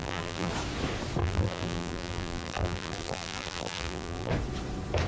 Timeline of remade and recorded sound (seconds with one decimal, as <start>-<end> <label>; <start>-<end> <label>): 0.0-0.5 remade; 0.5-1.2 recorded; 1.2-4.3 remade; 4.3-5.1 recorded